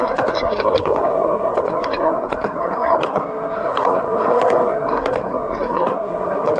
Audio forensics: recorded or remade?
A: remade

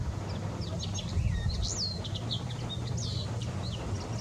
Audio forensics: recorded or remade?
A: recorded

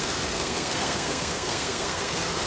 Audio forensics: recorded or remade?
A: remade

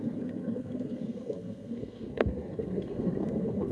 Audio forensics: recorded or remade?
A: remade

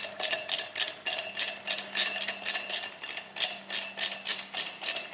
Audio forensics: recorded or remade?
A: recorded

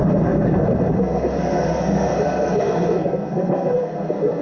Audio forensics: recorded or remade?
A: remade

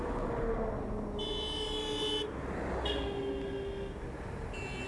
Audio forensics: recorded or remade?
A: recorded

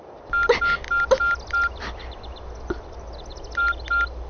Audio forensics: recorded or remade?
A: recorded